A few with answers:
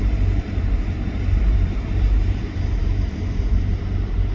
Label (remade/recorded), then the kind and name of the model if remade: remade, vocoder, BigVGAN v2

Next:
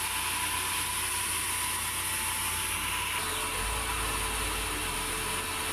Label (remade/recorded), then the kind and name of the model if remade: recorded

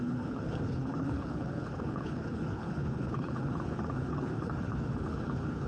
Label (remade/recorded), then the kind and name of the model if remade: remade, codec, HILCodec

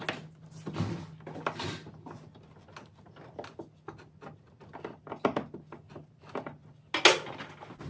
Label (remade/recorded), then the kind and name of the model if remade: recorded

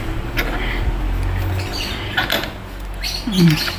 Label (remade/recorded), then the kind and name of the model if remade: recorded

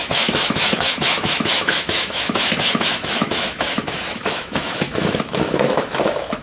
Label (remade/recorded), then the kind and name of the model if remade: remade, autoencoder, DAC-VAE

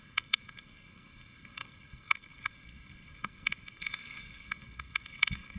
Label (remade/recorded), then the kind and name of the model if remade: remade, codec, SNAC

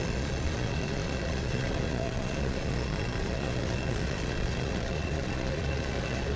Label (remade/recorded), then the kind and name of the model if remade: remade, vocoder, Vocos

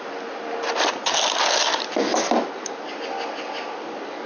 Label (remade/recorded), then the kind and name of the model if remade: recorded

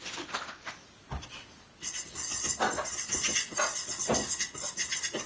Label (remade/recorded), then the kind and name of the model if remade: recorded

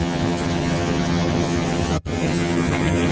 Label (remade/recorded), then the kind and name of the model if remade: remade, vocoder, HiFi-GAN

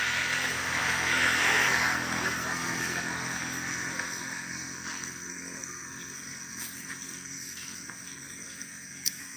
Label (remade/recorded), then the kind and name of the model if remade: remade, codec, SNAC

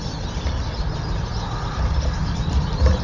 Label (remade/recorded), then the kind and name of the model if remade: recorded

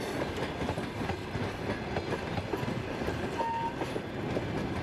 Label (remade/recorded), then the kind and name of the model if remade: recorded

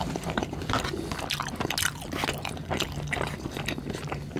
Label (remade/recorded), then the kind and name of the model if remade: recorded